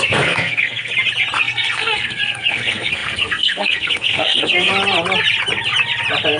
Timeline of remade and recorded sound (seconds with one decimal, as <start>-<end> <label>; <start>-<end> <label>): 0.0-0.9 remade; 0.9-1.4 recorded; 1.4-4.7 remade; 4.7-6.4 recorded

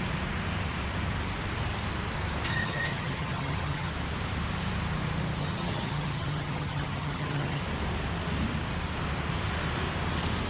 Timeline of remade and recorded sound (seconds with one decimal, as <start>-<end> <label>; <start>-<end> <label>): 0.0-2.5 recorded; 2.5-3.9 remade; 3.9-5.4 recorded; 5.4-7.6 remade; 7.6-10.5 recorded